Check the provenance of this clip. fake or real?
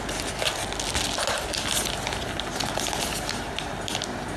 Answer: real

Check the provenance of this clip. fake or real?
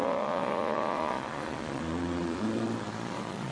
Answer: fake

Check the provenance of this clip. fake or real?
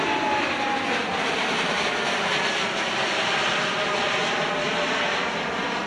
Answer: real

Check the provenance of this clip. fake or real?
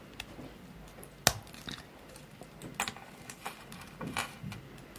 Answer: real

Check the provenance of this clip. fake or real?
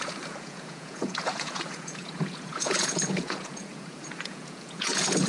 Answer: fake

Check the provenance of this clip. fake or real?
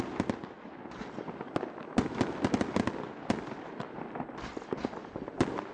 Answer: real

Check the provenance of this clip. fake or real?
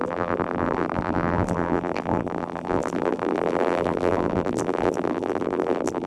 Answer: fake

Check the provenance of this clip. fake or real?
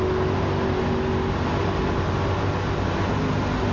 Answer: real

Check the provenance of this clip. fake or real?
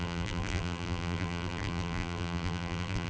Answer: fake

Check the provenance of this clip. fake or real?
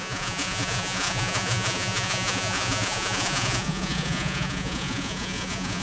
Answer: fake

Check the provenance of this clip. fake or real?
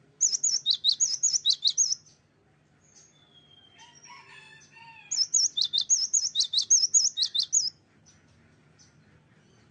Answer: real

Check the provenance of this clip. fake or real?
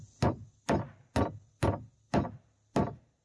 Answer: real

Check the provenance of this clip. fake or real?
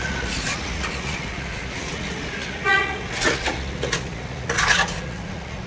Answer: fake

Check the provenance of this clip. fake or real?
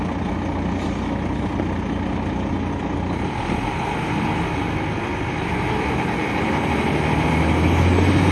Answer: real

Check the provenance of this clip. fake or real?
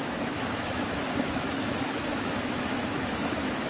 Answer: fake